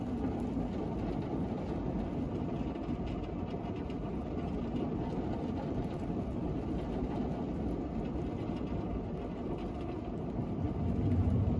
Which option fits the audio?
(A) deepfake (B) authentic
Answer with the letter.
B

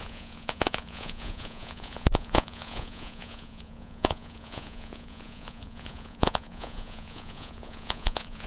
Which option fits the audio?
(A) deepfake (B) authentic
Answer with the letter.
A